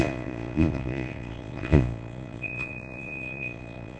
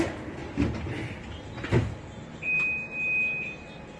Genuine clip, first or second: second